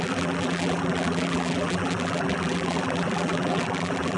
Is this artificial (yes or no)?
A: yes